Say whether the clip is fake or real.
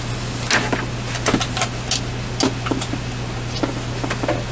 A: real